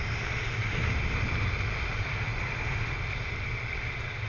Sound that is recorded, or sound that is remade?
recorded